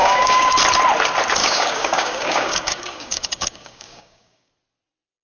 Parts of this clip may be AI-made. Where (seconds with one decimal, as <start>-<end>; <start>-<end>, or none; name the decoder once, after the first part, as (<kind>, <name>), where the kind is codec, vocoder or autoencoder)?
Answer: 0.0-0.5 (codec, DAC); 1.4-4.5